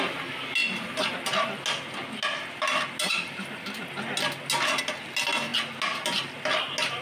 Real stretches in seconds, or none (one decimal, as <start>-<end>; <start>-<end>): 0.0-7.0